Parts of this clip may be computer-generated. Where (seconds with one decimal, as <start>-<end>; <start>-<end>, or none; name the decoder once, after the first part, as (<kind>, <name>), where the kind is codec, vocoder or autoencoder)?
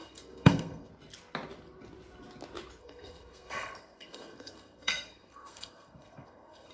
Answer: 0.0-0.9 (codec, SNAC); 2.8-6.7